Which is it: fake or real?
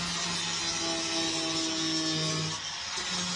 real